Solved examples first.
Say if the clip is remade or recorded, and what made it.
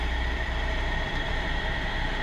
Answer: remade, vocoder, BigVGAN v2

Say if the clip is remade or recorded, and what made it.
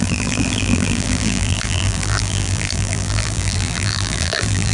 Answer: remade, vocoder, BigVGAN v2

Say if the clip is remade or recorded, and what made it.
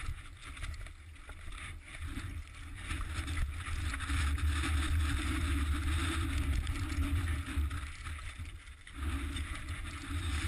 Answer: recorded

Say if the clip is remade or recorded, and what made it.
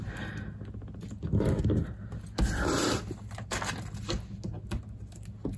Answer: recorded